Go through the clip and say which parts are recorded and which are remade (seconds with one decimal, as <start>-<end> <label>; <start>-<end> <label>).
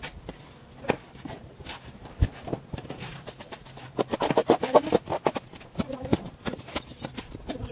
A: 0.0-1.4 recorded; 1.4-3.8 remade; 3.8-7.7 recorded